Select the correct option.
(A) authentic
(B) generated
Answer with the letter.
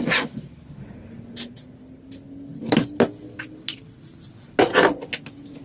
A